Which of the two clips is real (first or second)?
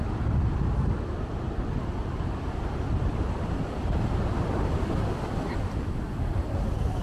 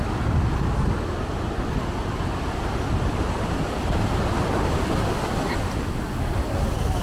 second